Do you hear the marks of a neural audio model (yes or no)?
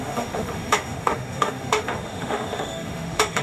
yes